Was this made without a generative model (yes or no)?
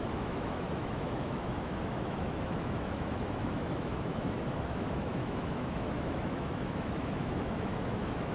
no